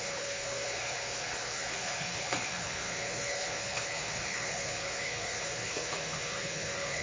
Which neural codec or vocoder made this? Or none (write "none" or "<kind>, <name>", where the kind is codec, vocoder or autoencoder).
codec, HILCodec